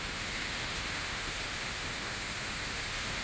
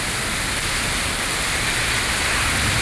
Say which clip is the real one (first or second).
second